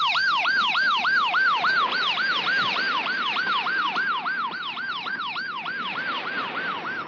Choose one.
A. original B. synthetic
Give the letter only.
B